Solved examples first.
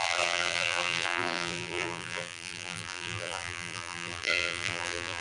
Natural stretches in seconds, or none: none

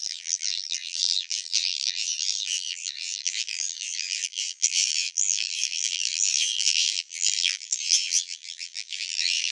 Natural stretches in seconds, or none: none

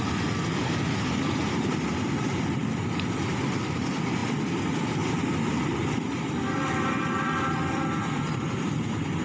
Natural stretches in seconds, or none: none

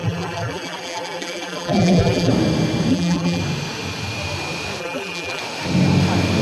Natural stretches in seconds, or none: 2.3-2.9; 3.4-4.8; 5.4-6.4

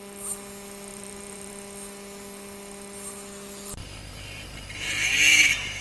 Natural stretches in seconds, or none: 0.0-0.9; 1.5-3.8

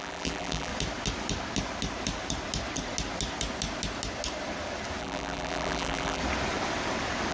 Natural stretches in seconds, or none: 0.7-5.0; 6.2-7.3

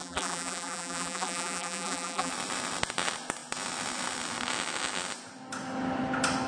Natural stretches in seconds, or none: 2.3-6.5